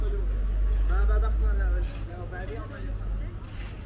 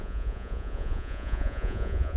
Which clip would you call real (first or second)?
first